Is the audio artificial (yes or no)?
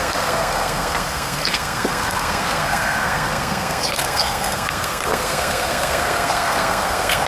yes